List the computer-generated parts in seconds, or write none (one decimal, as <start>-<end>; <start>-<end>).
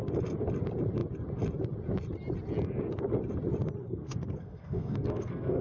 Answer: 3.8-5.6